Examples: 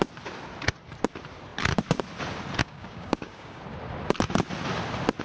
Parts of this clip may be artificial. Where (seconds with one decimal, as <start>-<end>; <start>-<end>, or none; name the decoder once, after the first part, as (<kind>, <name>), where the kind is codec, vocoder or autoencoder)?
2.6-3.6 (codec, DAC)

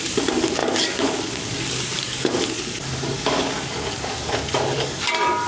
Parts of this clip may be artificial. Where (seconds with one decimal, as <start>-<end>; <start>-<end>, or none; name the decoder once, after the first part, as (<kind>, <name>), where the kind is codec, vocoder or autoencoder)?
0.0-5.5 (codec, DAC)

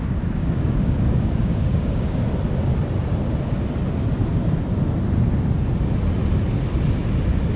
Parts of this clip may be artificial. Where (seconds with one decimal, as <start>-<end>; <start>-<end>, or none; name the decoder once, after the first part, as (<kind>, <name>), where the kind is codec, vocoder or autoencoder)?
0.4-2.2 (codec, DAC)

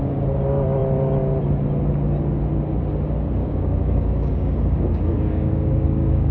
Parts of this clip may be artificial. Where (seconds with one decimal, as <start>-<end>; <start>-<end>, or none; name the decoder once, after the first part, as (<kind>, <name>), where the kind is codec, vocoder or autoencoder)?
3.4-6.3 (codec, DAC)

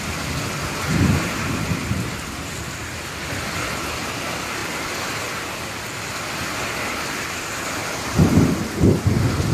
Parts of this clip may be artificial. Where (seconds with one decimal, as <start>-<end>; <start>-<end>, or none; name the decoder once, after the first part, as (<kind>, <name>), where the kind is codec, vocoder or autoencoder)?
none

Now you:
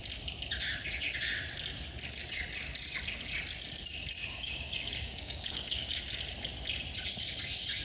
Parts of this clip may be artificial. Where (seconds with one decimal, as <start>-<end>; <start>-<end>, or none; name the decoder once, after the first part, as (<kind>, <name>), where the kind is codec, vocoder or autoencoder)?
4.2-6.0 (codec, DAC)